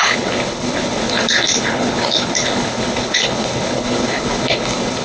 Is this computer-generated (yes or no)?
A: yes